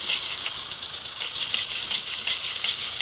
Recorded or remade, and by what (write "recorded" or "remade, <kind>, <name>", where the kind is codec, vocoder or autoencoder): remade, codec, DAC